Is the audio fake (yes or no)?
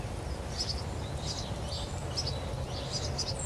no